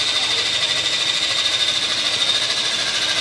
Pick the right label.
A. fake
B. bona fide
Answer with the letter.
B